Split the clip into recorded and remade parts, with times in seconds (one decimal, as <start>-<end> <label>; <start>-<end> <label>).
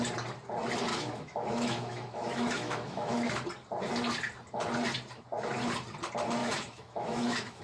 0.0-0.9 recorded; 0.9-3.3 remade; 3.3-6.4 recorded; 6.4-7.6 remade